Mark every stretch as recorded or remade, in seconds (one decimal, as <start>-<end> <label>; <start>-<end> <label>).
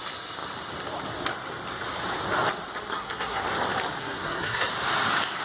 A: 0.0-2.9 recorded; 2.9-3.4 remade; 3.4-4.0 recorded; 4.0-4.7 remade; 4.7-5.4 recorded